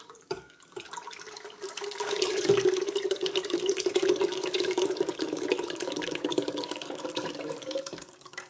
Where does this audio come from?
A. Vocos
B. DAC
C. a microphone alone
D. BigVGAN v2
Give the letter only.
B